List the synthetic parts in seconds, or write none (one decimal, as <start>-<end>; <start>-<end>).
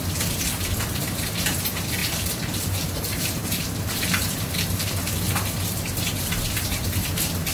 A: 0.0-7.5